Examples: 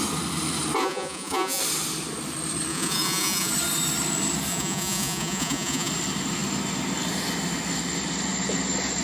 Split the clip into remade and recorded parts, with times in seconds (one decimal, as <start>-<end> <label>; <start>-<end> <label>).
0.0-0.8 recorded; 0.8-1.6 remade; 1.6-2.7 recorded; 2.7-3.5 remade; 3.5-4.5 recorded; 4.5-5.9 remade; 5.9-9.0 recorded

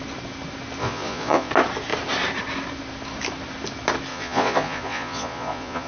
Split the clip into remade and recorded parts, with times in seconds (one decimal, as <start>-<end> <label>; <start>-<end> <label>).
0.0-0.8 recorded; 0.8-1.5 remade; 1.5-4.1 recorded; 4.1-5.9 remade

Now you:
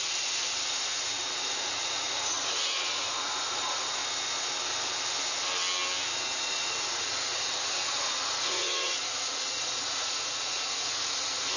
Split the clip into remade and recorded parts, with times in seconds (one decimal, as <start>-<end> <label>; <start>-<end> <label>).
0.0-4.0 remade; 4.0-6.2 recorded; 6.2-11.6 remade